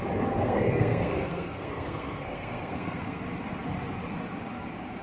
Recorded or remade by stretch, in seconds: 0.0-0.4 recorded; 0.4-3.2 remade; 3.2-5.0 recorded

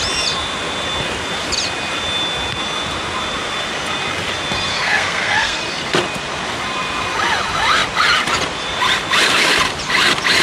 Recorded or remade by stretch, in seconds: 0.0-4.7 recorded; 4.7-5.6 remade; 5.6-10.4 recorded

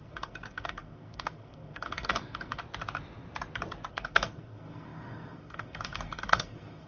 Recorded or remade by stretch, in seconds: 0.0-2.6 remade; 2.6-3.9 recorded; 3.9-6.9 remade

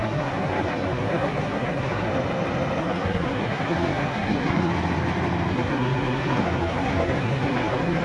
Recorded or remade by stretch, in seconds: 0.0-2.1 remade; 2.1-2.8 recorded; 2.8-4.7 remade; 4.7-5.5 recorded; 5.5-8.0 remade

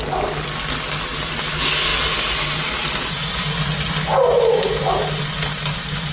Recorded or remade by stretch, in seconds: 0.0-6.1 recorded